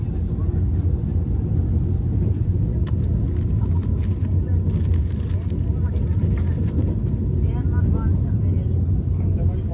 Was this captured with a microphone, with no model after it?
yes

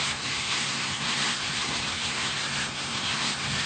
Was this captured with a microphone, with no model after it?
no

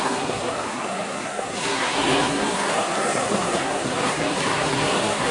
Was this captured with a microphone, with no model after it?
no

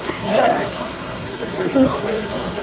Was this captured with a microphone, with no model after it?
no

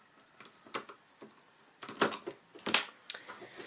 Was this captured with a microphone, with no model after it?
yes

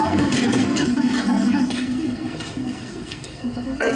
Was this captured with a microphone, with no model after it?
no